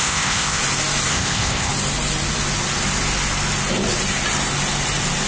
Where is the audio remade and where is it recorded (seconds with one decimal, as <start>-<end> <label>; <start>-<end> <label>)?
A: 0.0-0.6 remade; 0.6-1.1 recorded; 1.1-1.7 remade; 1.7-5.3 recorded